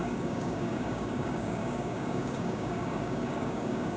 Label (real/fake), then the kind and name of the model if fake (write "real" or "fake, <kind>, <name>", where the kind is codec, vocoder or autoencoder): fake, codec, DAC